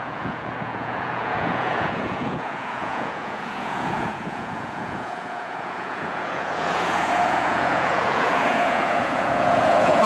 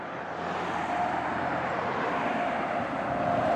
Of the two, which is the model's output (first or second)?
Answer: first